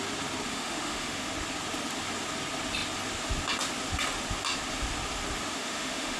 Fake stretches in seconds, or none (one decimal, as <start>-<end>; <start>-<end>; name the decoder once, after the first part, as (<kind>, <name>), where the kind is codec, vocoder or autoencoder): 0.5-1.3 (autoencoder, DAC-VAE); 5.5-6.2